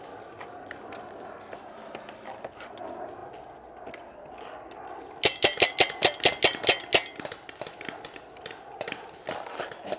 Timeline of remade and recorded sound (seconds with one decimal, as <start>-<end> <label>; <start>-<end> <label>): 0.0-10.0 recorded